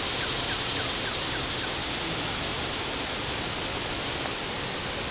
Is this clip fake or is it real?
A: real